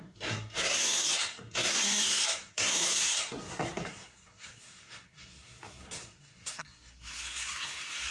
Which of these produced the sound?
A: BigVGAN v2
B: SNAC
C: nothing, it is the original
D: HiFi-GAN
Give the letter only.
B